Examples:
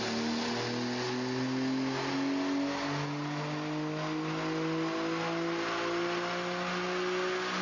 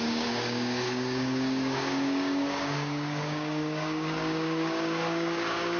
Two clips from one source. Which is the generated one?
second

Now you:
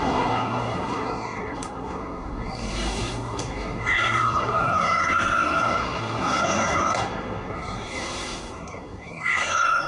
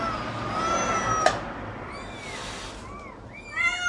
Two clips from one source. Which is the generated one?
first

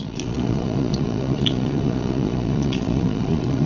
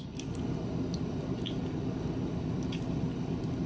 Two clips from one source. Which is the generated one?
first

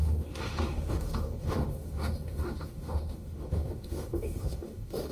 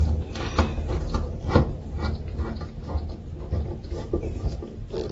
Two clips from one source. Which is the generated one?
first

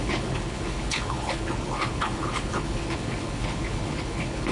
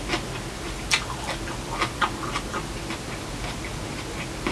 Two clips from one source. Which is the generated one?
first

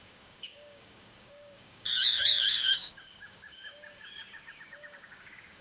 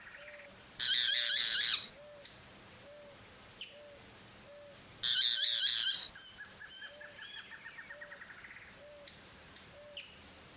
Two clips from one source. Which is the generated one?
first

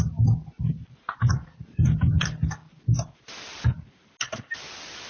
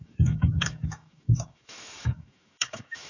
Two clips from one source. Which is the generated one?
second